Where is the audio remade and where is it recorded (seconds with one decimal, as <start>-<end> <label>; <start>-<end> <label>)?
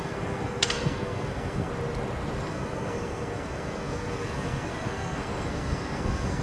0.0-1.7 remade; 1.7-2.5 recorded; 2.5-6.4 remade